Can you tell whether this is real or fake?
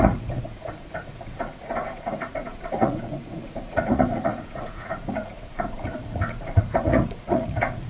fake